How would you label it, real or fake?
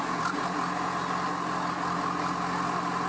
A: real